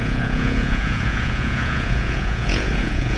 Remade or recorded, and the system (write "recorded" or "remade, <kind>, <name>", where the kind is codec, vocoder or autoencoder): remade, vocoder, Vocos